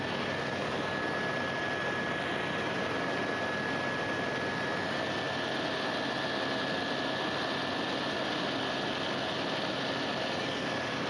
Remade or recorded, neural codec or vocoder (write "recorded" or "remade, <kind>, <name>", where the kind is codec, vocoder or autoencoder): recorded